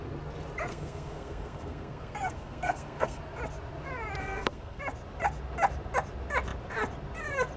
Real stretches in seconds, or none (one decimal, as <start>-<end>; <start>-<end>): 0.0-0.7; 3.2-4.2; 4.8-7.6